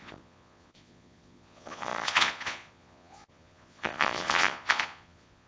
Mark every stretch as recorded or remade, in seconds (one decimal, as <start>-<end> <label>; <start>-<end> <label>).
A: 0.0-5.5 remade

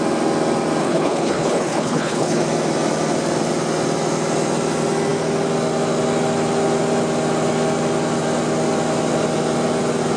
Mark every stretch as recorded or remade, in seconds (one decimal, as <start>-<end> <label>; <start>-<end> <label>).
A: 0.0-0.8 recorded; 0.8-2.4 remade; 2.4-10.2 recorded